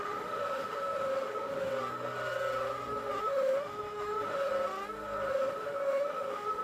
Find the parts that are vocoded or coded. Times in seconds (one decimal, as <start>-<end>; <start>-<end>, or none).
0.0-1.7; 3.2-4.5; 5.3-6.6